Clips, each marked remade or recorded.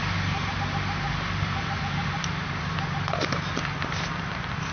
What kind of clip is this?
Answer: recorded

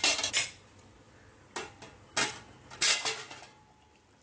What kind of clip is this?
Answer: recorded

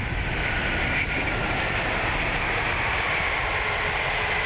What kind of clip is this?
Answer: recorded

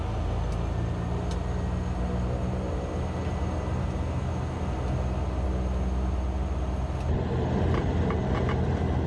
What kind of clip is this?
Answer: recorded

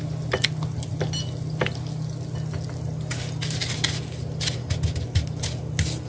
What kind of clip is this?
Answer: recorded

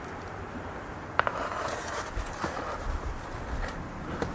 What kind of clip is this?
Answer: remade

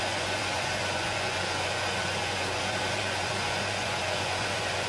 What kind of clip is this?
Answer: remade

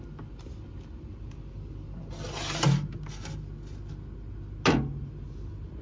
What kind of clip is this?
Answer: recorded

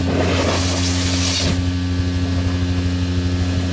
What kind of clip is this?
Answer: recorded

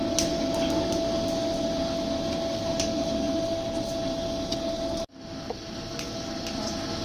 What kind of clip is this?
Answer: recorded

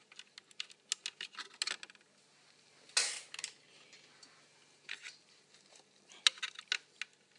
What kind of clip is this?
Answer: recorded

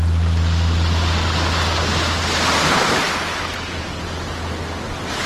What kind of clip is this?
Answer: recorded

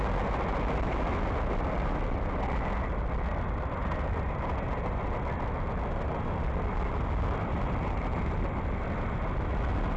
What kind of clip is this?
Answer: recorded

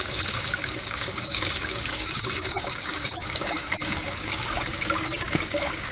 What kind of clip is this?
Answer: remade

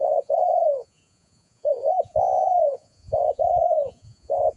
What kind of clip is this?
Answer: remade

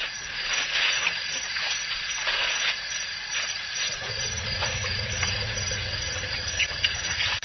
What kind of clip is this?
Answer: remade